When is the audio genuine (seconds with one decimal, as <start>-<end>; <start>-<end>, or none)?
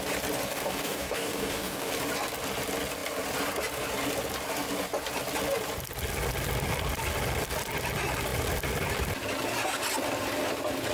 0.0-0.5; 1.9-10.9